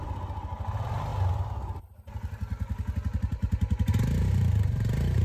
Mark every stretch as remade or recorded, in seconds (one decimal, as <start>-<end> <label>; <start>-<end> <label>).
0.0-1.1 remade; 1.1-4.2 recorded; 4.2-5.2 remade